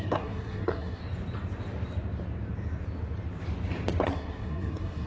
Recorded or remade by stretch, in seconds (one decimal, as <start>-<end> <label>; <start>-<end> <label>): 0.0-1.0 remade; 1.0-4.1 recorded; 4.1-5.1 remade